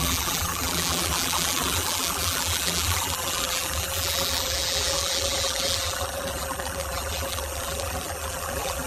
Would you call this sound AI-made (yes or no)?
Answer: yes